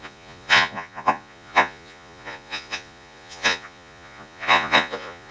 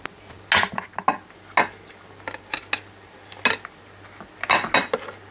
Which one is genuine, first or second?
second